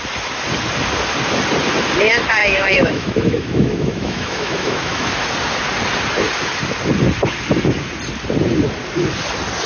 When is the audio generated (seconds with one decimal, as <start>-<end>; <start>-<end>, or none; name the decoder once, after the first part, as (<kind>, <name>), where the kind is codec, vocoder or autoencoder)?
2.4-5.1 (autoencoder, DAC-VAE)